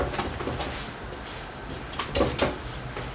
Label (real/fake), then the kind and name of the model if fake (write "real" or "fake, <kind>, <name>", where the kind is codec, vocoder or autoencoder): real